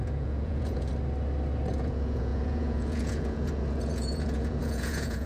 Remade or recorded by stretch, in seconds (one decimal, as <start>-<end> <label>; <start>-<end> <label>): 0.0-0.9 remade; 0.9-1.7 recorded; 1.7-5.3 remade